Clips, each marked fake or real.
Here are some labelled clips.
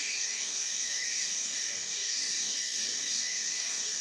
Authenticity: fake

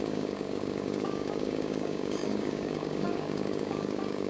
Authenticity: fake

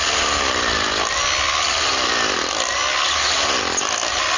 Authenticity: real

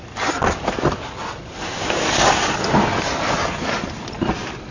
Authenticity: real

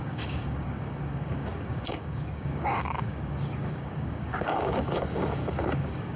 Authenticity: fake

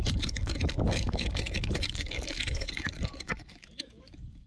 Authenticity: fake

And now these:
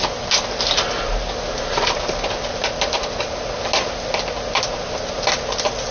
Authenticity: real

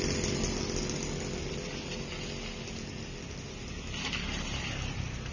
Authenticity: real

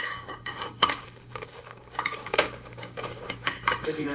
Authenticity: fake